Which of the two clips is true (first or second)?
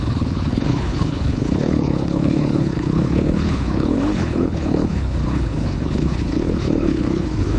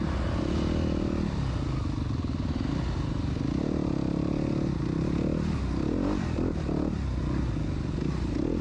second